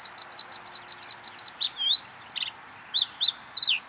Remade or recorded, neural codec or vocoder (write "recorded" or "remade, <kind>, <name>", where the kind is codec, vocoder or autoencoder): recorded